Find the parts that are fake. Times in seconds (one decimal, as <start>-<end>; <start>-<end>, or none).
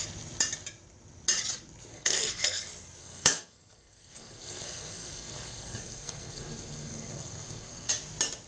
1.9-2.6; 3.0-7.9